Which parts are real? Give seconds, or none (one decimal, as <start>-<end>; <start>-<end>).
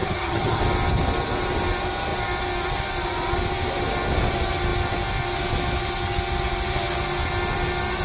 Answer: 0.6-8.0